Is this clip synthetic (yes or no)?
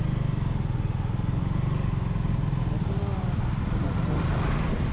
no